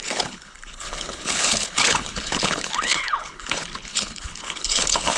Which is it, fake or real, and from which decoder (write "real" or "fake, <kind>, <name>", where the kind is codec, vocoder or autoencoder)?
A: fake, codec, HILCodec